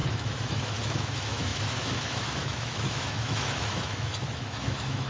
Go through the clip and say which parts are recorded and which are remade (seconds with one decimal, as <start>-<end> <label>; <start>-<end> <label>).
0.0-5.1 remade